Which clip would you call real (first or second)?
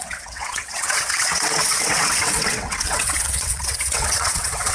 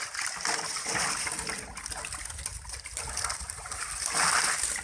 second